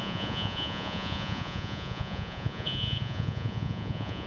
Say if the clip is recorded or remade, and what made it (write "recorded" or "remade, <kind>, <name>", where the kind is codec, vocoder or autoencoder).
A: remade, vocoder, Vocos